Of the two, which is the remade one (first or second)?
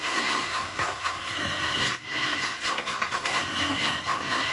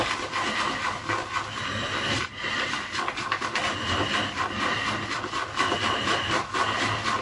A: first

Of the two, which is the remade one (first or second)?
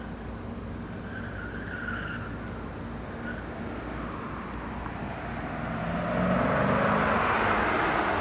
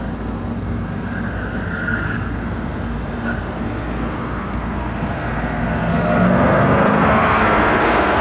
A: second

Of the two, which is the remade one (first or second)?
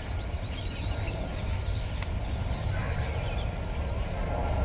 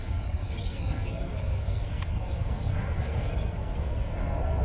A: second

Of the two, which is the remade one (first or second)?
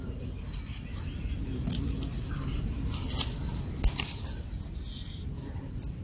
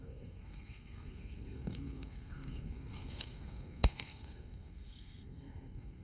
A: second